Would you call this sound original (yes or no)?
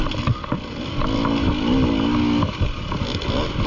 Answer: yes